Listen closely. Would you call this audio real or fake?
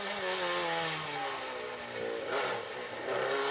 real